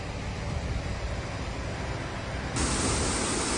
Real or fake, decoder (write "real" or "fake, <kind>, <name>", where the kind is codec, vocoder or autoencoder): real